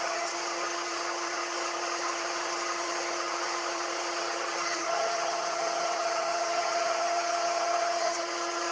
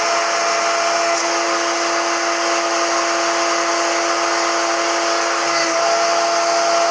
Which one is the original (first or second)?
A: second